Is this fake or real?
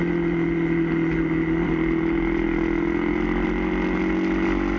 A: real